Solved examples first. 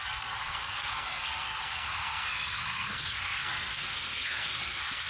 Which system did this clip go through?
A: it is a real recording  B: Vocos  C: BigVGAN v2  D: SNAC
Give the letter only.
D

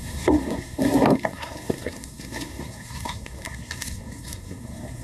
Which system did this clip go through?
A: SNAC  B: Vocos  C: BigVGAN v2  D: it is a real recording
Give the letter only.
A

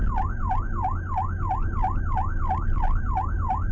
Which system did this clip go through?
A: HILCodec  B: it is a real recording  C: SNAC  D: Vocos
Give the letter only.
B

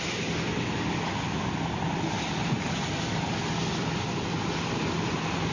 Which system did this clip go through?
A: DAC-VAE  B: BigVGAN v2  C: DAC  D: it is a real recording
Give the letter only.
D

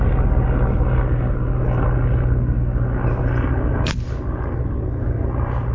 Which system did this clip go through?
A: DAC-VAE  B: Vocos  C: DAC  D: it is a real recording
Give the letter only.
D